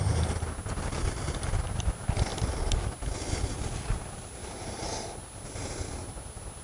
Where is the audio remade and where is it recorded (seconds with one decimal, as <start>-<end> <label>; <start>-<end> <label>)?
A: 0.0-6.6 recorded